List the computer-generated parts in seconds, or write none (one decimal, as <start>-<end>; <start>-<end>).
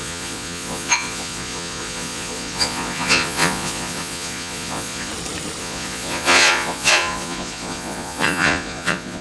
0.0-5.1; 5.6-9.2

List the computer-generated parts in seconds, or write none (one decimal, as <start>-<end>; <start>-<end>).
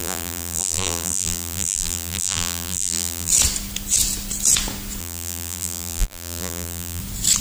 0.0-3.3; 5.0-7.0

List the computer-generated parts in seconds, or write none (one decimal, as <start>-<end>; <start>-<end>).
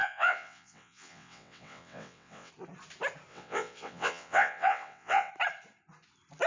0.0-2.5; 3.3-5.3